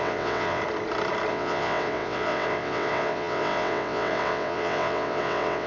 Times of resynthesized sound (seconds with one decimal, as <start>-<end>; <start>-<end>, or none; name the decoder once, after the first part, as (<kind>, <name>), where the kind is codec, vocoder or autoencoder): 0.0-0.6 (vocoder, WaveNeXt); 1.3-5.7